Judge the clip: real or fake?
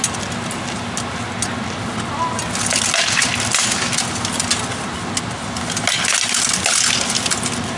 real